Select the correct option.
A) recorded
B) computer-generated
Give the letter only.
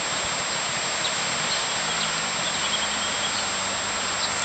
A